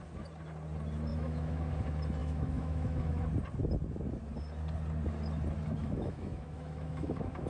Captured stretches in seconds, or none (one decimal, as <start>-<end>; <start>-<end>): 0.0-1.1; 1.7-2.2; 3.2-5.8